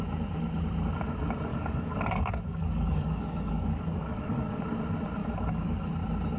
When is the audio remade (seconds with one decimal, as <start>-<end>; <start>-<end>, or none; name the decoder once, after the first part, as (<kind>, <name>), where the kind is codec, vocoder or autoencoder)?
1.5-4.6 (codec, DAC); 5.2-5.9